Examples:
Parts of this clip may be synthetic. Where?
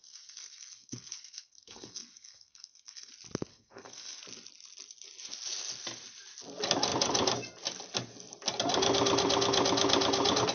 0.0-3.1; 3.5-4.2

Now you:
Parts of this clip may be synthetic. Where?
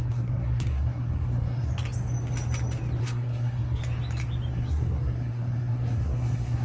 0.0-1.7; 3.0-3.8; 4.5-6.6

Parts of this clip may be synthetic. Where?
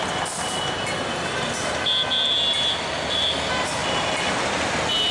none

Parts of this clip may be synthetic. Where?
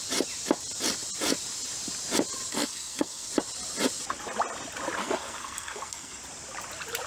2.5-3.3; 5.0-6.2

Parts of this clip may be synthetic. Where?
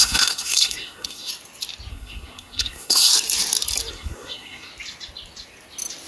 0.0-1.3; 1.9-3.1; 3.9-4.7